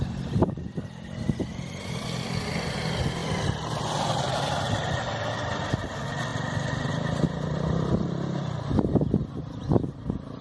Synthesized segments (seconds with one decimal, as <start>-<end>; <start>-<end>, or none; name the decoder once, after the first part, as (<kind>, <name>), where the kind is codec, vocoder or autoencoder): none